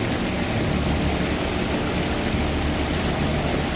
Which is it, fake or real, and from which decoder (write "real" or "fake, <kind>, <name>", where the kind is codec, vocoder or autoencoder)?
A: real